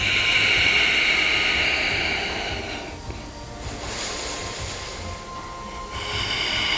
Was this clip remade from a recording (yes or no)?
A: no